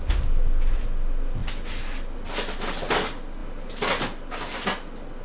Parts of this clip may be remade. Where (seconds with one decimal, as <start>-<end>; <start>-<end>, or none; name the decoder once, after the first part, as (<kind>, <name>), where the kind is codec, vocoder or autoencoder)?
none

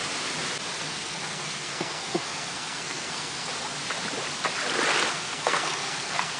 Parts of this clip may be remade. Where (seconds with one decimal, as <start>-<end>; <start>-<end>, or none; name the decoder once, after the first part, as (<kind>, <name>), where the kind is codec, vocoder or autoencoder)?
0.8-3.5 (codec, SNAC); 5.1-6.4

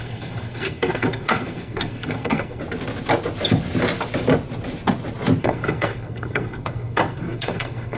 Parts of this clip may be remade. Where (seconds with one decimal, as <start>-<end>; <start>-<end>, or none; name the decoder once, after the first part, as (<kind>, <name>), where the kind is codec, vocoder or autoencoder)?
0.0-2.6 (codec, SNAC); 5.4-8.0